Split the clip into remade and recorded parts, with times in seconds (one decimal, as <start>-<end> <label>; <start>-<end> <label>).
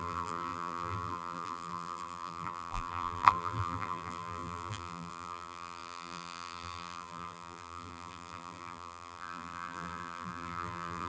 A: 0.0-11.1 remade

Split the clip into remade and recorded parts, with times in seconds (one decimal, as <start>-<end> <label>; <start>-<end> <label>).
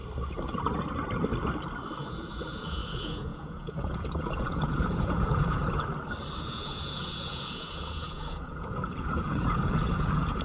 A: 0.0-2.0 recorded; 2.0-5.6 remade; 5.6-6.4 recorded; 6.4-10.4 remade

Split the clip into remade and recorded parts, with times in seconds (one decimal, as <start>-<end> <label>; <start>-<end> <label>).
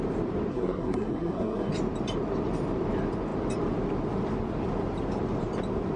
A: 0.0-0.5 recorded; 0.5-1.7 remade; 1.7-6.0 recorded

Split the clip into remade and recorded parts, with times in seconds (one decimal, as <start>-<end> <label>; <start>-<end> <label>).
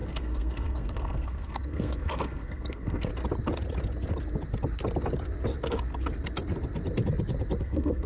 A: 0.0-3.1 remade; 3.1-7.6 recorded; 7.6-8.1 remade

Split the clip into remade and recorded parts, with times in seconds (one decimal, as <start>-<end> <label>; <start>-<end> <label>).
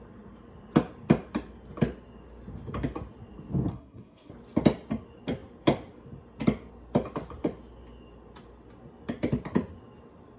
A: 0.0-3.7 recorded; 3.7-4.3 remade; 4.3-10.4 recorded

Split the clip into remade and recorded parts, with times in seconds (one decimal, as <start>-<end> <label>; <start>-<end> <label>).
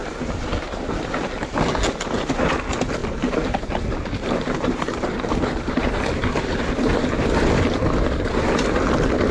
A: 0.0-1.2 remade; 1.2-3.0 recorded; 3.0-6.4 remade; 6.4-9.3 recorded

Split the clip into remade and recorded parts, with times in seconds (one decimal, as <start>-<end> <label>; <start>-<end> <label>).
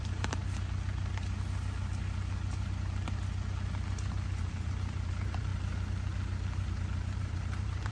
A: 0.0-0.4 remade; 0.4-4.4 recorded; 4.4-5.5 remade; 5.5-6.7 recorded; 6.7-7.9 remade